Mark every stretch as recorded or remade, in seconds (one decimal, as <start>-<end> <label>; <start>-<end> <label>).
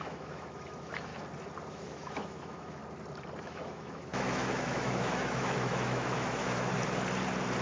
0.0-1.1 remade; 1.1-1.7 recorded; 1.7-2.8 remade; 2.8-3.4 recorded; 3.4-6.7 remade; 6.7-7.6 recorded